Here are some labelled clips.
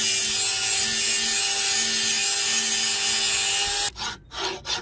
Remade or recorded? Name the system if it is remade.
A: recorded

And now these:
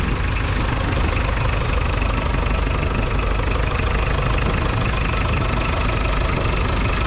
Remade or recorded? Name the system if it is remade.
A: recorded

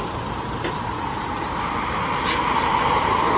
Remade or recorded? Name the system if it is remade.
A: recorded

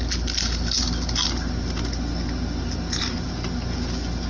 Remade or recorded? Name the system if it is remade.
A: recorded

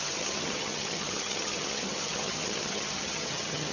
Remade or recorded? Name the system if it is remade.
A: remade, vocoder, HiFi-GAN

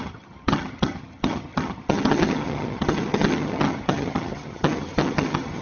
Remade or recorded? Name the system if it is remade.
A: remade, vocoder, HiFi-GAN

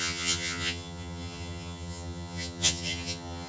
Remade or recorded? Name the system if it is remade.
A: remade, vocoder, HiFi-GAN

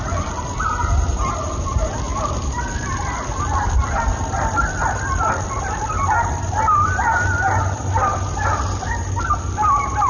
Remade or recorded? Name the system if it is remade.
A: recorded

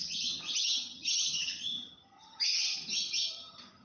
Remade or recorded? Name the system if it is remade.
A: remade, vocoder, HiFi-GAN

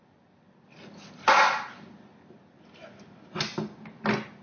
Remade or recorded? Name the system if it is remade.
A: recorded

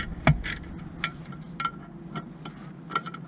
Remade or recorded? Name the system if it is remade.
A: recorded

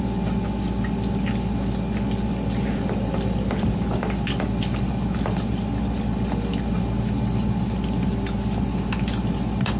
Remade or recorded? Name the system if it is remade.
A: recorded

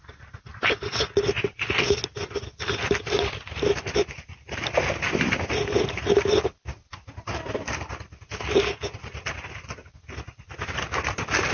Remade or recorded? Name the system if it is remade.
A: recorded